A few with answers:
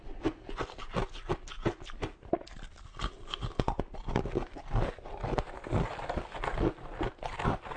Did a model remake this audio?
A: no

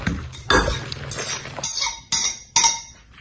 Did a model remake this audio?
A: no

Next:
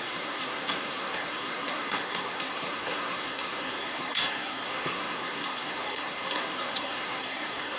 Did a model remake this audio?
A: yes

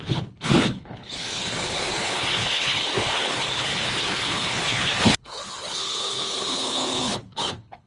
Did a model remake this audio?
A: yes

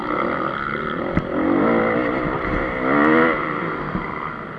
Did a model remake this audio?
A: no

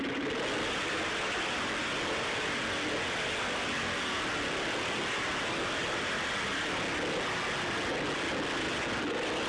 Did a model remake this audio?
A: no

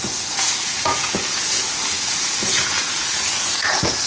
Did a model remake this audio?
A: yes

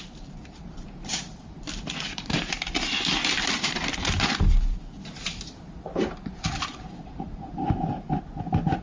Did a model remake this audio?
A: yes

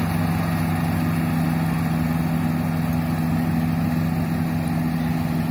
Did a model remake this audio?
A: no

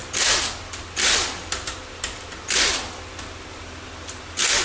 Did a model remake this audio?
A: no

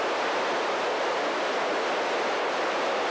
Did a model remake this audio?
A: no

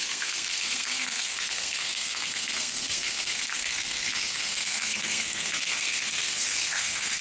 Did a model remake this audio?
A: yes